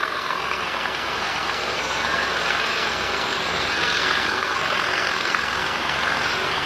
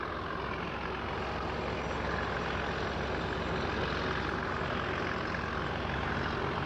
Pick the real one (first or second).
second